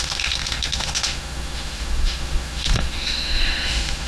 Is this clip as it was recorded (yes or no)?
no